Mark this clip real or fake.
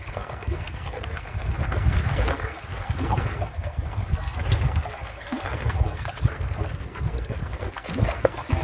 fake